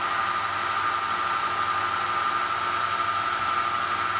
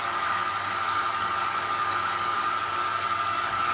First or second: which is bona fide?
first